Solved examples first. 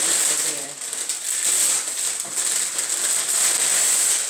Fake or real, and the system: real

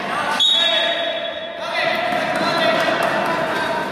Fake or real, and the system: real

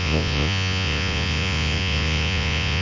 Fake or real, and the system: fake, vocoder, Vocos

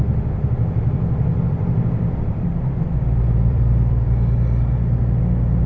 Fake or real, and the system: fake, vocoder, BigVGAN v2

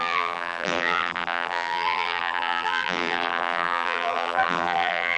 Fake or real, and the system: fake, vocoder, BigVGAN v2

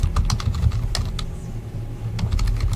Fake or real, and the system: real